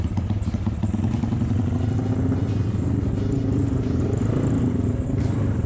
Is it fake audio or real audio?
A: real